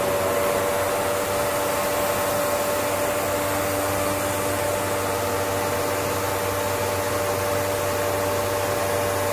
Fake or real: real